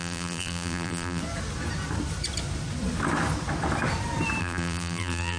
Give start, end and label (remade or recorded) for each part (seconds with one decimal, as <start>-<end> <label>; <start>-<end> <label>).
0.0-1.2 remade; 1.2-4.4 recorded; 4.4-5.4 remade